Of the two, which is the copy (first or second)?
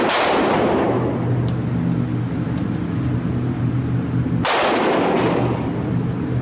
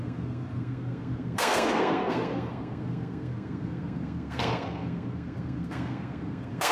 second